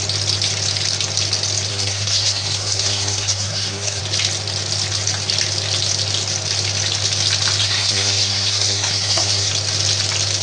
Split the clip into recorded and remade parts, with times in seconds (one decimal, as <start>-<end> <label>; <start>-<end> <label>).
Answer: 0.0-1.7 recorded; 1.7-4.0 remade; 4.0-7.6 recorded; 7.6-9.5 remade; 9.5-10.4 recorded